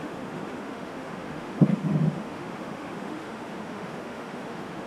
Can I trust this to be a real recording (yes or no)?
no